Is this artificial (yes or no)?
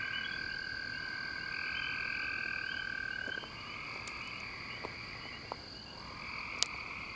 no